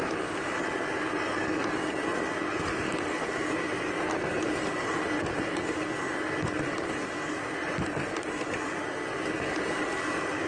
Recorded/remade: recorded